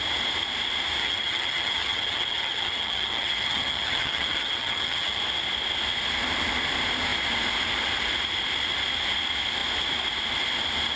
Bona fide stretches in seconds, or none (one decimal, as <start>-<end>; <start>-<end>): 0.0-1.0; 5.2-10.9